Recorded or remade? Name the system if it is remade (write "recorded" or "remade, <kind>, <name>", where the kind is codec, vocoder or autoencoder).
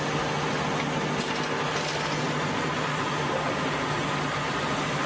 recorded